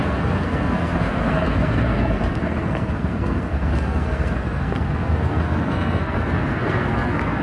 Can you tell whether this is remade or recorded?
remade